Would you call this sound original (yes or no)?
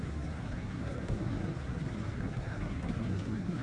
no